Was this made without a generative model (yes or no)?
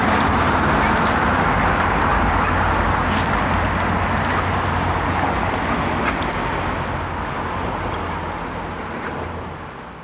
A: yes